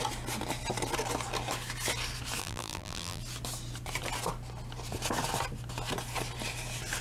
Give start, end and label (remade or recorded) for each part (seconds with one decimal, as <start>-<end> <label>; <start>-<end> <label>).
0.0-2.4 recorded; 2.4-3.2 remade; 3.2-7.0 recorded